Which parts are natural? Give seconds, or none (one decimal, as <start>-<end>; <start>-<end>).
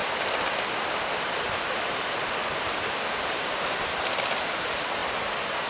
0.0-5.7